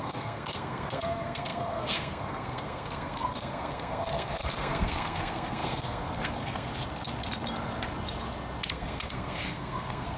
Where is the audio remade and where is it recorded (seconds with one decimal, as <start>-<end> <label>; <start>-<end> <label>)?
0.0-6.7 remade; 6.7-8.7 recorded; 8.7-10.2 remade